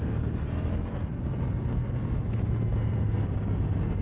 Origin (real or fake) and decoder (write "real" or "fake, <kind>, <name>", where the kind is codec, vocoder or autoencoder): real